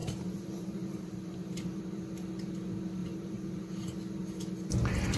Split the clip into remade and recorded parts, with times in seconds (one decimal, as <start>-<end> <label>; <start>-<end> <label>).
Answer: 0.0-1.8 remade; 1.8-3.0 recorded; 3.0-3.6 remade; 3.6-5.2 recorded